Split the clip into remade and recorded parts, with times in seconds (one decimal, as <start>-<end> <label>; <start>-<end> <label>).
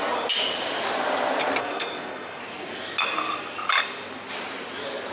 0.0-1.6 recorded; 1.6-2.4 remade; 2.4-5.1 recorded